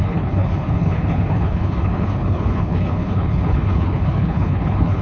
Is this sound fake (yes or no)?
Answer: yes